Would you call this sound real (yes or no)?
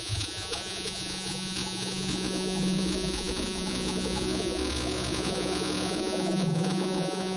no